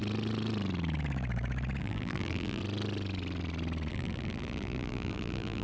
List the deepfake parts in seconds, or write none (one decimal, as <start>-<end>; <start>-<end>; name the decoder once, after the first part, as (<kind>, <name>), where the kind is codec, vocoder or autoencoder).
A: 1.8-2.6 (vocoder, BigVGAN v2); 3.9-5.6